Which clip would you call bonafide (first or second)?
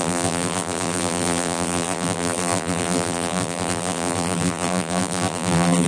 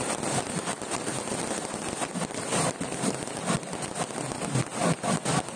second